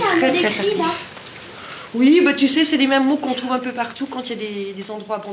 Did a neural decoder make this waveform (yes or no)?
no